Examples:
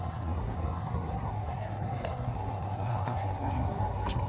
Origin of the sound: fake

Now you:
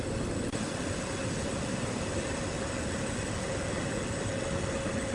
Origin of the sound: real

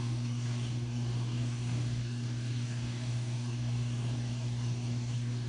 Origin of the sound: fake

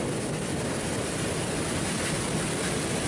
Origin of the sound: real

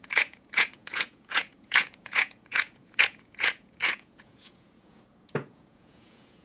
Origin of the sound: fake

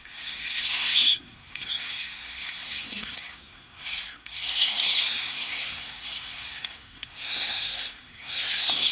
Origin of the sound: fake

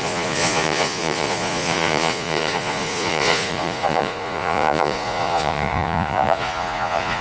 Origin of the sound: fake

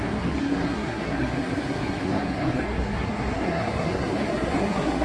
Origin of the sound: fake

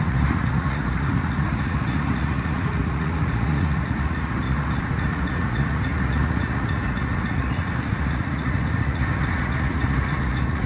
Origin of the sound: fake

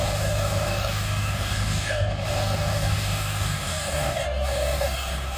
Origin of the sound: fake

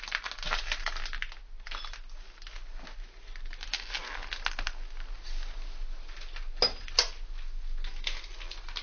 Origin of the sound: real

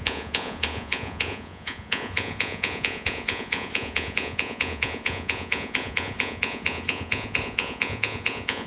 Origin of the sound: fake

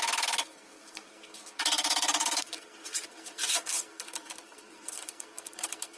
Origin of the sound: fake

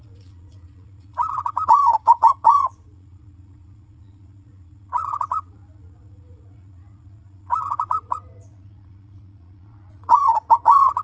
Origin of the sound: fake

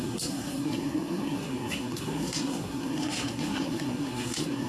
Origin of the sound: fake